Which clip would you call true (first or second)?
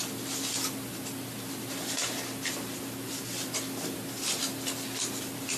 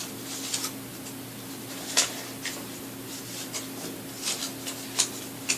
second